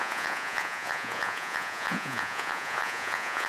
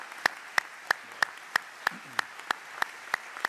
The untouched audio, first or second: second